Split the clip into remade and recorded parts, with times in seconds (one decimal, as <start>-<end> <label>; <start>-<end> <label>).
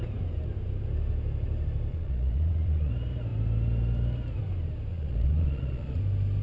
0.0-1.9 recorded; 1.9-2.9 remade; 2.9-4.9 recorded; 4.9-6.0 remade; 6.0-6.4 recorded